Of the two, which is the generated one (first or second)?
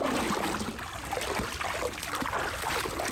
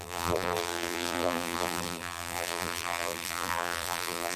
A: second